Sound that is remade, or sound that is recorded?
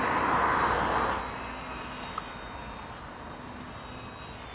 recorded